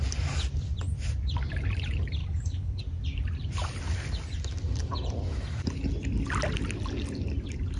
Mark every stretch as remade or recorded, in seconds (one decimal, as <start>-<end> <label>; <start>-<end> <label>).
0.0-2.2 recorded; 2.2-2.8 remade; 2.8-7.8 recorded